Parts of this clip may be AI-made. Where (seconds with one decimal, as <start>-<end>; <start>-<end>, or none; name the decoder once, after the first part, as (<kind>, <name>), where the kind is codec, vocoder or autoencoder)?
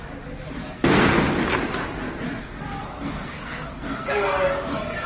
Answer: 0.5-1.1 (codec, SNAC); 2.4-5.1